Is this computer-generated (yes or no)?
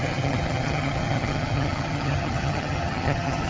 yes